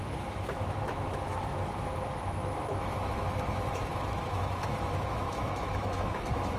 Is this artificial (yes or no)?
yes